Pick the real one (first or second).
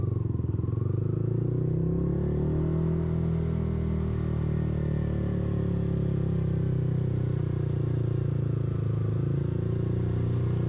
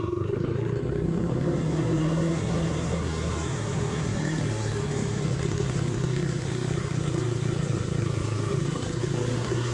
first